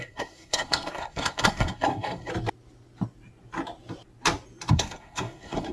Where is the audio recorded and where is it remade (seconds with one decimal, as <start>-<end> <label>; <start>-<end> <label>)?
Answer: 0.0-2.3 remade; 2.3-4.7 recorded; 4.7-5.7 remade